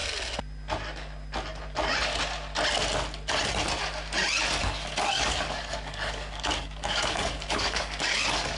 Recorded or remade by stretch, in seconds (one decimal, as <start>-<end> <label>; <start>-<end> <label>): 0.0-4.6 recorded; 4.6-8.6 remade